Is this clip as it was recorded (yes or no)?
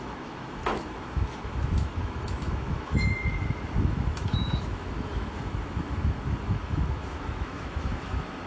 no